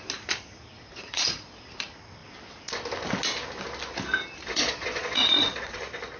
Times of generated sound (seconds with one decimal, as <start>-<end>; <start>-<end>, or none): 0.9-1.6; 4.5-5.8